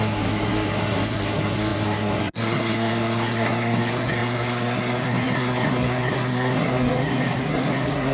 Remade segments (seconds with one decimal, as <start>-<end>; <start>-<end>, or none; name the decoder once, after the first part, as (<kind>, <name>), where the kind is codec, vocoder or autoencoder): 0.0-8.1 (codec, SNAC)